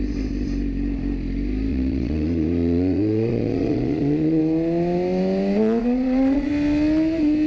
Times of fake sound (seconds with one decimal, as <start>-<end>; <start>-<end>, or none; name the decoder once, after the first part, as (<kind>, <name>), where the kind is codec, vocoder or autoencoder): 1.7-4.4 (vocoder, Vocos); 5.8-6.5

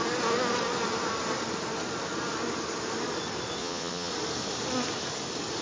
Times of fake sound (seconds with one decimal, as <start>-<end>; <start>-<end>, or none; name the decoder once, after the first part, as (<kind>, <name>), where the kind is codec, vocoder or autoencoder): 3.6-4.1 (vocoder, Vocos)